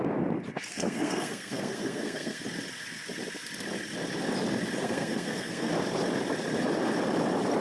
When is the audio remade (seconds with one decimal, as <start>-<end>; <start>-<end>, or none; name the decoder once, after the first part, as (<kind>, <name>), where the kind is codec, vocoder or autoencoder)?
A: 0.7-2.4 (codec, SNAC); 4.8-5.7